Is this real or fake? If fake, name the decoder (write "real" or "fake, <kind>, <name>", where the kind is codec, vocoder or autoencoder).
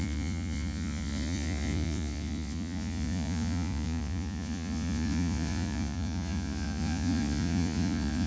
fake, vocoder, Vocos